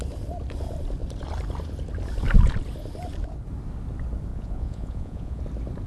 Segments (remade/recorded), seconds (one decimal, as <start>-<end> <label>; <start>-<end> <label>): 0.0-4.3 recorded; 4.3-5.4 remade; 5.4-5.9 recorded